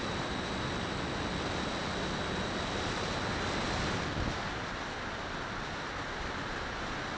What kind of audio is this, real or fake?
real